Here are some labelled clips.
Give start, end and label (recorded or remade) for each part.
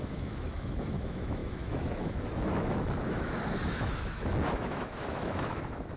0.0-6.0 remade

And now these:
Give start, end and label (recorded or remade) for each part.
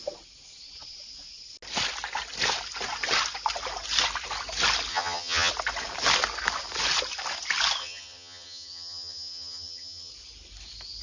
0.0-4.9 recorded; 4.9-5.5 remade; 5.5-7.8 recorded; 7.8-10.1 remade; 10.1-11.0 recorded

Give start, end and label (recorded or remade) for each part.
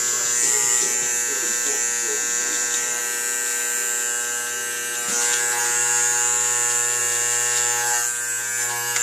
0.0-2.4 recorded; 2.4-3.0 remade; 3.0-9.0 recorded